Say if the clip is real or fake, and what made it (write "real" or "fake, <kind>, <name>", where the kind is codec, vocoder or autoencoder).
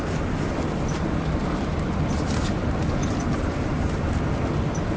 real